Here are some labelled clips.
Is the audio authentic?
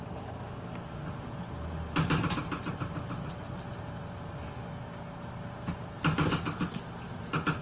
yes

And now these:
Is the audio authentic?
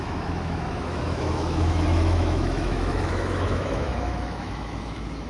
no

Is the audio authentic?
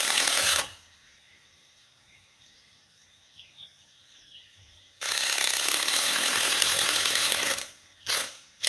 no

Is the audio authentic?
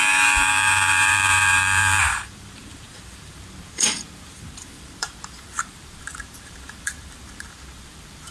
no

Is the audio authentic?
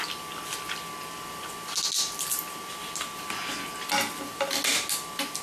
yes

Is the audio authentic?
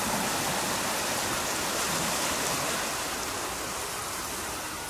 yes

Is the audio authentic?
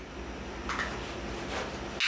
yes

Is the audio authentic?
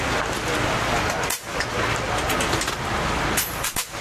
yes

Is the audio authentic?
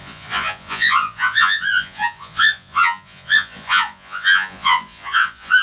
no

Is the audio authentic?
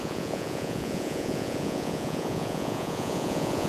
no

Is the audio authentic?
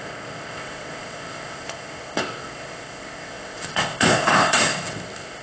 no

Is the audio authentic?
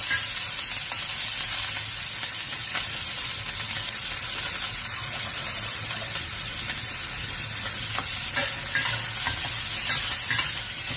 yes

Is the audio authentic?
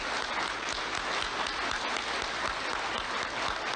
yes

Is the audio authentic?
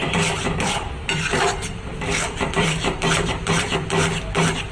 no